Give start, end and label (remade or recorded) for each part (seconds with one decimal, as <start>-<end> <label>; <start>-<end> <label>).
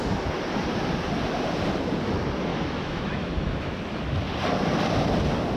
0.0-2.5 recorded; 2.5-3.7 remade; 3.7-5.6 recorded